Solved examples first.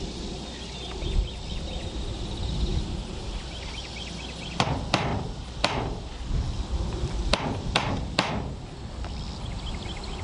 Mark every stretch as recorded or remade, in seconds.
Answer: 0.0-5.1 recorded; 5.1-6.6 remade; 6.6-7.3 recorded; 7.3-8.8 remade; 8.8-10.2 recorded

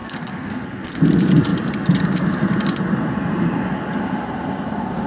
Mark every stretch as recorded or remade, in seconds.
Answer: 0.0-1.0 remade; 1.0-5.1 recorded

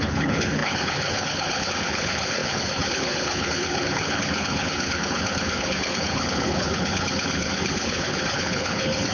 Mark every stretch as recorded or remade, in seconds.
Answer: 0.0-9.1 remade

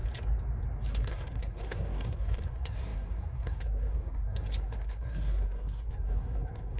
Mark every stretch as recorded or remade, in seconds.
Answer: 0.0-0.9 recorded; 0.9-6.8 remade

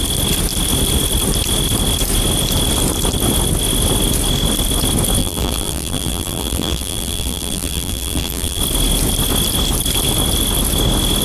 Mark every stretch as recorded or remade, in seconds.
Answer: 0.0-5.2 recorded; 5.2-8.6 remade; 8.6-11.2 recorded